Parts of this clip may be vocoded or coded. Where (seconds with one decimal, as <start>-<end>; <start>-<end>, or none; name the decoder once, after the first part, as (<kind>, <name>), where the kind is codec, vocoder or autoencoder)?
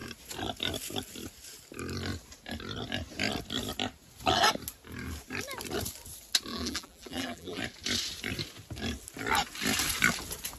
6.5-7.6 (vocoder, BigVGAN v2)